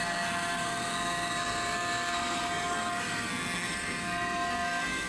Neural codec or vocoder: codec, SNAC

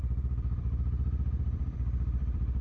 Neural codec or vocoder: vocoder, BigVGAN v2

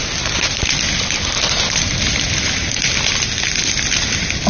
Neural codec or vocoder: none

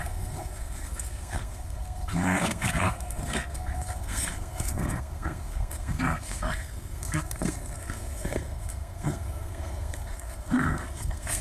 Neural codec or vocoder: codec, SNAC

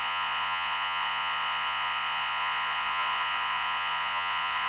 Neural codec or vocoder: vocoder, Vocos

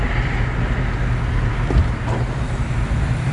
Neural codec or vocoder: none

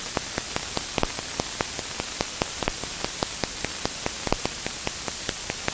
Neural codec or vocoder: none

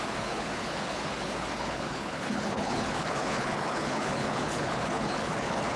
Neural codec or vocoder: codec, HILCodec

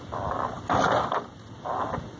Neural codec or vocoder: none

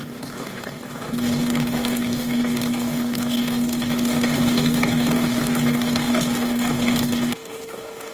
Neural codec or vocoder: codec, DAC